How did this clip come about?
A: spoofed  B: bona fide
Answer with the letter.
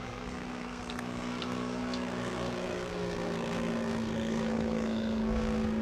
A